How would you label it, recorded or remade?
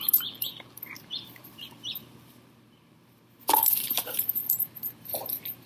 remade